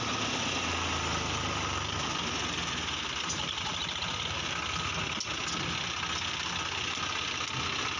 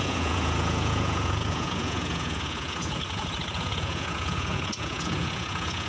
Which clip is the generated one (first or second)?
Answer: second